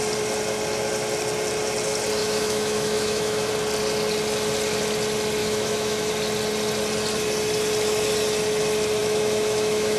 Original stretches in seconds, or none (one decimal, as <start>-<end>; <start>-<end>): 0.0-2.2; 3.5-5.4; 6.1-9.0